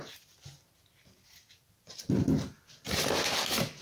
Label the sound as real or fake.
real